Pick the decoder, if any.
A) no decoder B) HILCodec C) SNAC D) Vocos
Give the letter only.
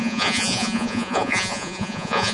D